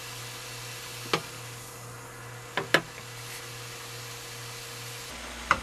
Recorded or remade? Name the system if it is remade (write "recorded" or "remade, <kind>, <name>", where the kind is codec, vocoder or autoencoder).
recorded